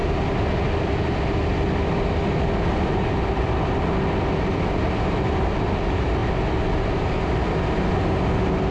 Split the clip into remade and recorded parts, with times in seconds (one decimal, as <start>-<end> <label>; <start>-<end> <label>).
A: 0.0-8.7 recorded